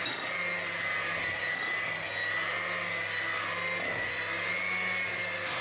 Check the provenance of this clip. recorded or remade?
recorded